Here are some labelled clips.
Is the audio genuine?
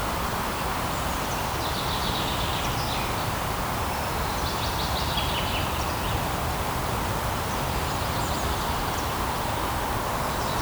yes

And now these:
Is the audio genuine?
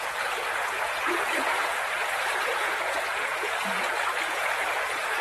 no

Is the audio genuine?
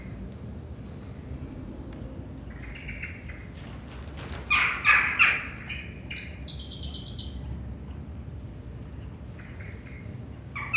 yes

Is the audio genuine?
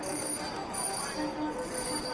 yes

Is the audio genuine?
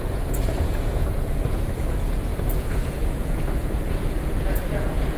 no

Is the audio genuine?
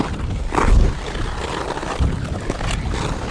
yes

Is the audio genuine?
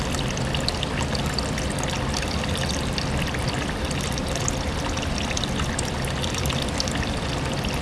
yes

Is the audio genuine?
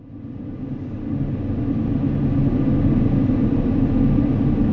yes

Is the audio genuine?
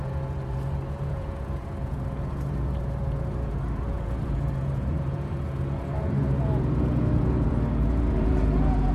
no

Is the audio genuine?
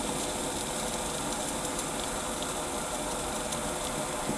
yes